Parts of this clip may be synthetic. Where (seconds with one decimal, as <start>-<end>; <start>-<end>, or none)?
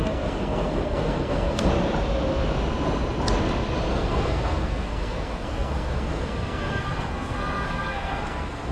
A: 0.0-1.7; 3.9-8.7